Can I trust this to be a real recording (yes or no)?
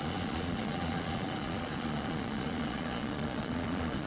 no